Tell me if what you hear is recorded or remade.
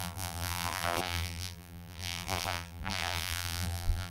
remade